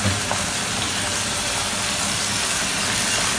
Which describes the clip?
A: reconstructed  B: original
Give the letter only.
B